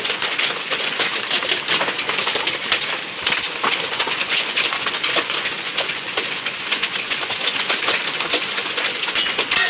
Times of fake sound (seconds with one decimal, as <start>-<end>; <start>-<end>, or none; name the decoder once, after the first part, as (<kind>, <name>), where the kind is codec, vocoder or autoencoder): 0.0-1.1 (vocoder, Vocos); 1.8-2.3; 3.9-9.7